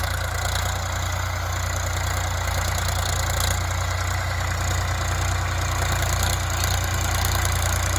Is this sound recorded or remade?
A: recorded